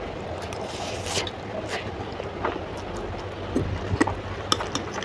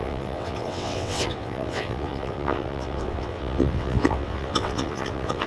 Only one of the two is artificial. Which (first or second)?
second